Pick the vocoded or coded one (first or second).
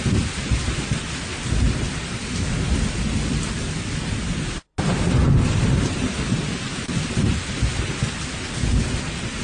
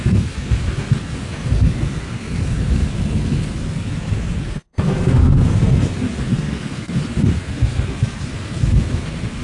second